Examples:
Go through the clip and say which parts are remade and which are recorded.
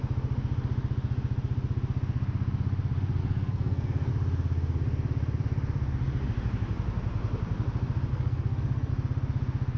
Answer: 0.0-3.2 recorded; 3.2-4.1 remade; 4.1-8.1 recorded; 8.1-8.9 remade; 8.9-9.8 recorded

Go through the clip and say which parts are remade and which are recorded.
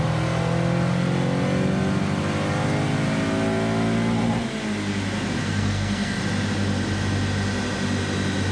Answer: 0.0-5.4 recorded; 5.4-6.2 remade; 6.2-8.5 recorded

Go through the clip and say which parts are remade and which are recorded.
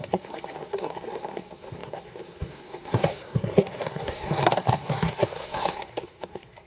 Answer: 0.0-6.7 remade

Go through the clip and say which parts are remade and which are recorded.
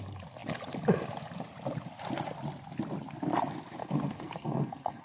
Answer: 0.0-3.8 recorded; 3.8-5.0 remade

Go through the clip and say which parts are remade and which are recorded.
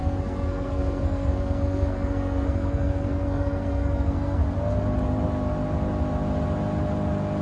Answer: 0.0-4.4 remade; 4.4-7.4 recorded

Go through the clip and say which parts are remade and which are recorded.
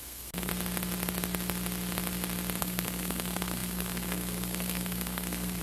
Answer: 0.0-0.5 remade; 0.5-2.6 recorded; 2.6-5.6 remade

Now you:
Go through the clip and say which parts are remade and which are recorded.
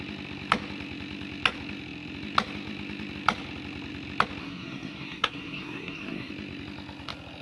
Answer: 0.0-4.4 recorded; 4.4-6.3 remade; 6.3-7.4 recorded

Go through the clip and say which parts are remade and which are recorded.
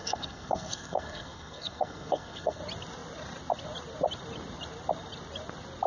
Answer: 0.0-2.6 remade; 2.6-5.9 recorded